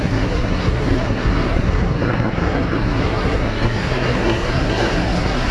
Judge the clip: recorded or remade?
remade